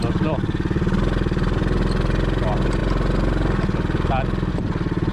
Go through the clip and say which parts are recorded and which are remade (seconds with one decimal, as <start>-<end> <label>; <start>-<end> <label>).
0.0-5.1 recorded